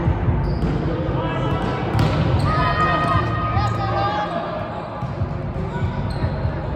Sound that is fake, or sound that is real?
real